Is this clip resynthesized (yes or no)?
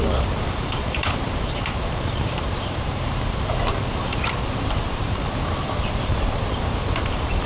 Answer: yes